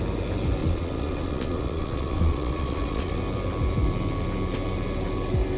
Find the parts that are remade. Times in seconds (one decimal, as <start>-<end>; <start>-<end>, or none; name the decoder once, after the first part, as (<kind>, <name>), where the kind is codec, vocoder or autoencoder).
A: 0.6-3.2 (vocoder, Vocos)